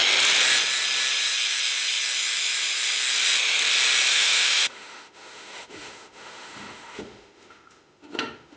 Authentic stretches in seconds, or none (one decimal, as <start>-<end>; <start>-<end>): 0.0-4.1